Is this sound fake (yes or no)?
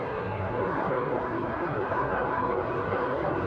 yes